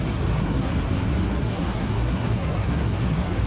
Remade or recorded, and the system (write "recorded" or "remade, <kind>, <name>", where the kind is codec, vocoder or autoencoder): remade, codec, SNAC